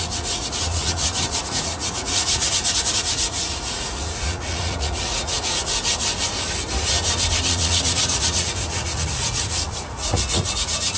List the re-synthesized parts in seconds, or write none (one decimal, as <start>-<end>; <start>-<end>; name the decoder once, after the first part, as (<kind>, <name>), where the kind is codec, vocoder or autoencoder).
0.0-5.8 (vocoder, Vocos); 7.5-11.0